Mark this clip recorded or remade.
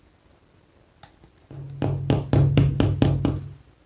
recorded